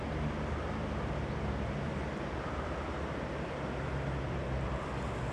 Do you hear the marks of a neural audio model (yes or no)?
yes